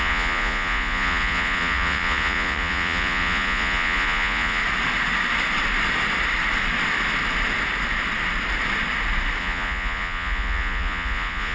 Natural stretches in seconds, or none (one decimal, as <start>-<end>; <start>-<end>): 4.6-9.4